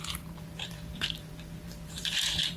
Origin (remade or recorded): remade